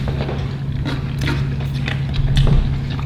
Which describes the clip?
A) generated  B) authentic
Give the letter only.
B